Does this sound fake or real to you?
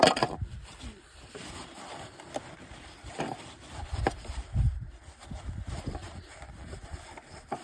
fake